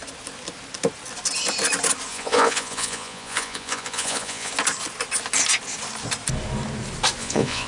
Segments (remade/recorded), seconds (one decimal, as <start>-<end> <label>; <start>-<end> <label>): 0.0-2.1 recorded; 2.1-4.5 remade; 4.5-7.2 recorded; 7.2-7.7 remade